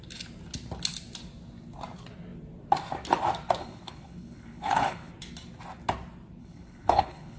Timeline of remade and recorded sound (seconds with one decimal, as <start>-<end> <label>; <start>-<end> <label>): 0.0-3.6 recorded; 3.6-5.1 remade; 5.1-6.4 recorded; 6.4-7.4 remade